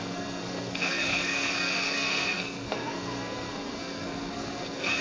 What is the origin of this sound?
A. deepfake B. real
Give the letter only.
A